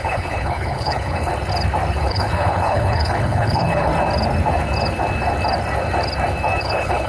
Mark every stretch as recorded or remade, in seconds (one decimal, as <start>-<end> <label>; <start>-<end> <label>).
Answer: 0.0-1.3 remade; 1.3-2.0 recorded; 2.0-3.9 remade; 3.9-6.6 recorded; 6.6-7.1 remade